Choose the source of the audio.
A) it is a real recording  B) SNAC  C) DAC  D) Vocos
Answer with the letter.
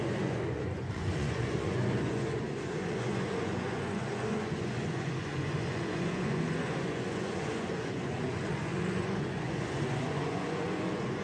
D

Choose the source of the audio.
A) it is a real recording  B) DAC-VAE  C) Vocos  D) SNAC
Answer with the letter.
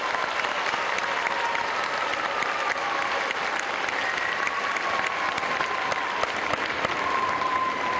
A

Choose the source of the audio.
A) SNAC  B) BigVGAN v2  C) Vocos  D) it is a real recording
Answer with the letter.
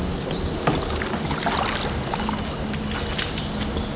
D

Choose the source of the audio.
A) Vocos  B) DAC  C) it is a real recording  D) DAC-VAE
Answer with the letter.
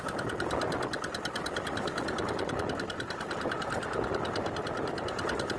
C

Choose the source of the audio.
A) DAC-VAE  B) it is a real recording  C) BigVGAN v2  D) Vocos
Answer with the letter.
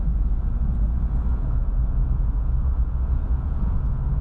D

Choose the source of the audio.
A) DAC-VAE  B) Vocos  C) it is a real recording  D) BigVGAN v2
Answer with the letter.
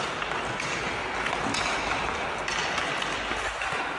C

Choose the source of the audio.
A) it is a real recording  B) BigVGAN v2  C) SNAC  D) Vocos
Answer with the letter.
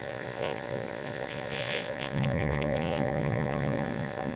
D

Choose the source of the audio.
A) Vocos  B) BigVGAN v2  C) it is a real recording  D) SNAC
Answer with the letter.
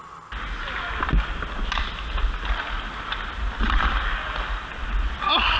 C